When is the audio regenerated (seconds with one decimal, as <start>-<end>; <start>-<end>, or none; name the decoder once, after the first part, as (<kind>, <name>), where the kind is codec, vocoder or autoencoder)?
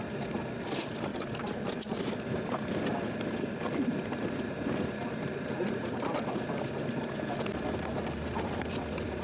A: none